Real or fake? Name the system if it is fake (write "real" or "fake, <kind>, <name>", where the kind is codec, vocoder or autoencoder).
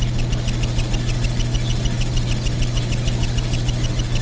real